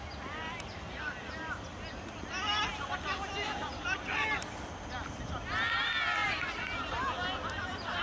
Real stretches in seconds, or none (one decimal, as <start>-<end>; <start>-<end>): 0.0-8.0